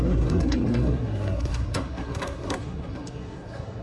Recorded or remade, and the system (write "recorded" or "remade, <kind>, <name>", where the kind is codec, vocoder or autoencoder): remade, codec, SNAC